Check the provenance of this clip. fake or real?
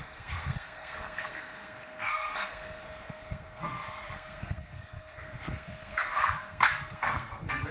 fake